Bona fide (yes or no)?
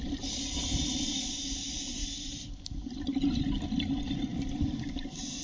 yes